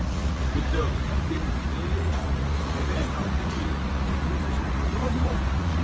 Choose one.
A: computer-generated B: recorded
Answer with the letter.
A